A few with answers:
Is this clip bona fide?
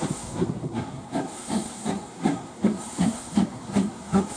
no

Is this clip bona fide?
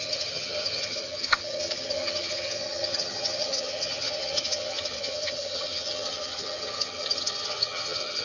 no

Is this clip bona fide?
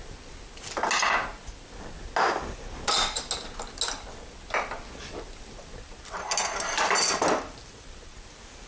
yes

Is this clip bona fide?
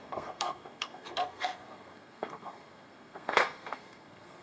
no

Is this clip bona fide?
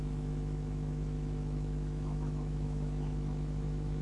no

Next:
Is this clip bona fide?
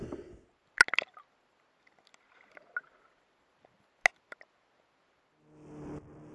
yes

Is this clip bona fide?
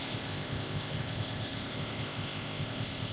no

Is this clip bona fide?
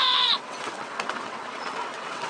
no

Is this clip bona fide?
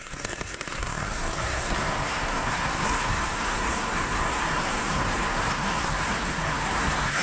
no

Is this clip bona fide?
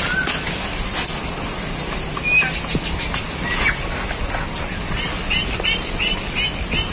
yes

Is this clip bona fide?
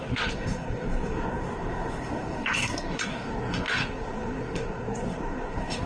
no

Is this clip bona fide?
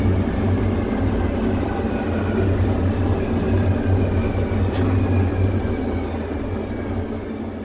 yes